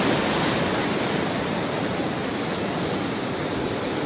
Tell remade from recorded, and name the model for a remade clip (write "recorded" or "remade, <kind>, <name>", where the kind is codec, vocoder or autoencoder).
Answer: recorded